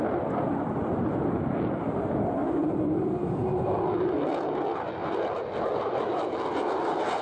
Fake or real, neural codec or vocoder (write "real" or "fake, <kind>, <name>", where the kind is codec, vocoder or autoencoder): real